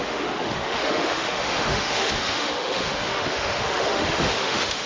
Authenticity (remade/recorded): remade